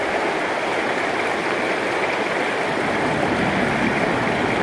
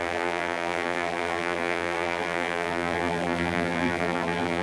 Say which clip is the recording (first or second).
first